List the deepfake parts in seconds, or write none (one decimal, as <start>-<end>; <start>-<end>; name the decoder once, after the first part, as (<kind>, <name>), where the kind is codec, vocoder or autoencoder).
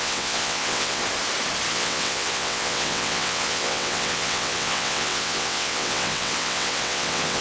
0.0-1.0 (vocoder, WaveNeXt); 1.7-7.4